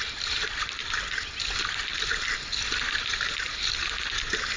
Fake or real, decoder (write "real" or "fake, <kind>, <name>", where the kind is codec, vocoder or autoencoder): real